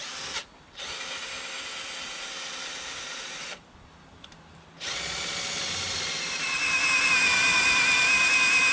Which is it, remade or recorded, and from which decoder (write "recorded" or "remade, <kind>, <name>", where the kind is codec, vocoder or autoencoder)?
recorded